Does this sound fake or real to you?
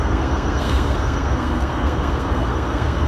fake